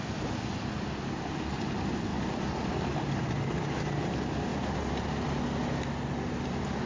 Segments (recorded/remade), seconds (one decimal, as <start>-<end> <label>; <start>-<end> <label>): 0.0-6.9 recorded